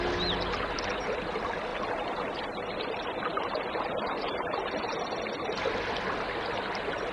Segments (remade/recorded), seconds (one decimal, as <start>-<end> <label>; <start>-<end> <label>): 0.0-7.1 recorded